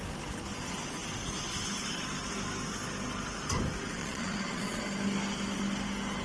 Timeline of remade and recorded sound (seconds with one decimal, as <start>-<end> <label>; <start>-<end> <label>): 0.0-4.0 recorded; 4.0-4.8 remade; 4.8-6.2 recorded